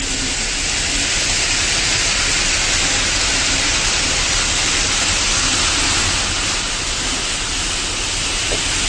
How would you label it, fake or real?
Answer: real